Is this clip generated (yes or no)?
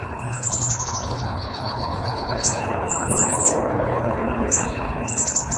yes